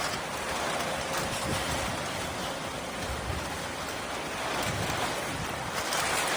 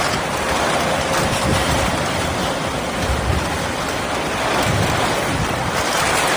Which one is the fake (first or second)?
second